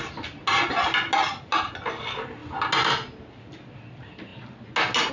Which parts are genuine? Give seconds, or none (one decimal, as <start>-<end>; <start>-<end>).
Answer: 0.0-5.1